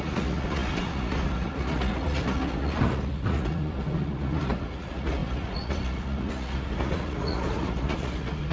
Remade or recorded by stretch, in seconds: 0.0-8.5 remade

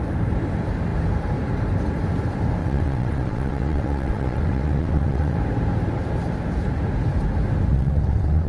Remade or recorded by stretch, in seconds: 0.0-2.6 recorded; 2.6-5.4 remade; 5.4-7.7 recorded; 7.7-8.5 remade

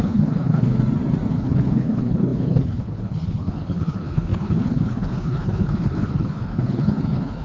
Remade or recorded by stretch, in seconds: 0.0-0.7 remade; 0.7-1.3 recorded; 1.3-7.4 remade

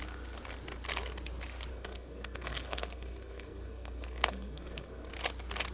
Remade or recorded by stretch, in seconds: 0.0-1.7 recorded; 1.7-5.1 remade; 5.1-5.7 recorded

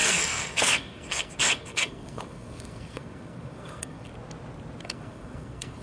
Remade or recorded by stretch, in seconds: 0.0-4.1 remade; 4.1-4.8 recorded; 4.8-5.8 remade